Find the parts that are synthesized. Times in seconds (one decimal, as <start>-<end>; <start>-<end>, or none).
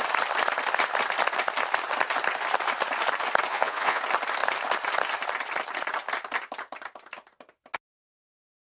3.5-4.0